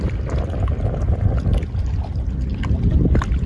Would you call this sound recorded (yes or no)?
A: yes